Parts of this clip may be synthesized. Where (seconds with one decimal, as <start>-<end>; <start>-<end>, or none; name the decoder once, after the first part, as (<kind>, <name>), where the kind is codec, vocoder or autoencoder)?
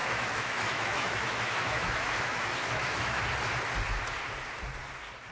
0.0-3.2 (autoencoder, DAC-VAE)